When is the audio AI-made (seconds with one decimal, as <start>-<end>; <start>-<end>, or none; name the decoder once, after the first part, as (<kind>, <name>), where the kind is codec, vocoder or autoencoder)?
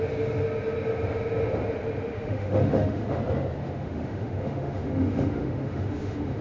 2.1-3.2 (autoencoder, DAC-VAE); 3.6-6.4